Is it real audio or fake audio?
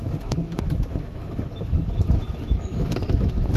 fake